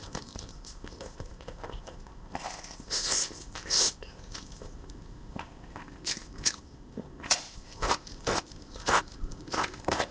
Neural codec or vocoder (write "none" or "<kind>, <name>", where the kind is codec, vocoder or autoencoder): codec, ZipCodec